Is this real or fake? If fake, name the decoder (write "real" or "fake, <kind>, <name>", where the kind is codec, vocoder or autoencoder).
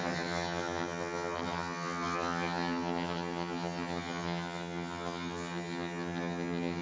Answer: fake, vocoder, HiFi-GAN